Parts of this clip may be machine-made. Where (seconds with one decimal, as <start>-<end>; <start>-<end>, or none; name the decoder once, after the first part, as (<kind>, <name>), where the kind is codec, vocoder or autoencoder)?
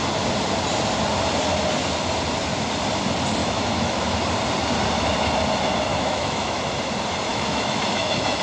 3.4-4.2 (autoencoder, DAC-VAE); 5.9-6.6; 7.3-8.4